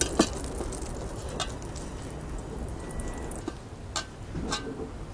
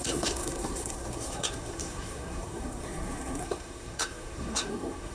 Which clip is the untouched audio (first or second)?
first